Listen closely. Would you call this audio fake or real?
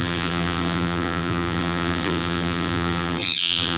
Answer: fake